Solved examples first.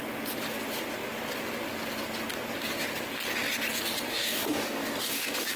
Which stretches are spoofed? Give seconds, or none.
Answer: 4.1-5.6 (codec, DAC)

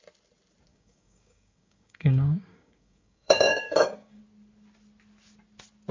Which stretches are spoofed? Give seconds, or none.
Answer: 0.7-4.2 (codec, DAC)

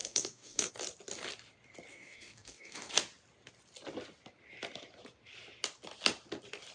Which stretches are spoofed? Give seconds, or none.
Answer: 0.0-0.7 (codec, DAC); 1.9-2.9